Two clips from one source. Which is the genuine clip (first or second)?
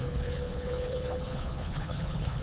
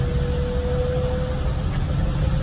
second